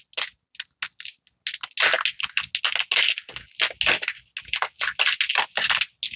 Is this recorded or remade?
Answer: recorded